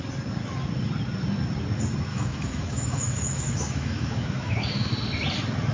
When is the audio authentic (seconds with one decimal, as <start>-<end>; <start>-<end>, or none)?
0.0-2.1; 4.9-5.7